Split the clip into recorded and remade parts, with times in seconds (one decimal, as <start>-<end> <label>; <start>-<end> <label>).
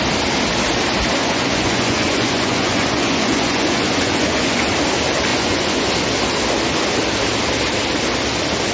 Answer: 0.0-1.2 recorded; 1.2-4.7 remade; 4.7-5.3 recorded; 5.3-5.9 remade; 5.9-8.7 recorded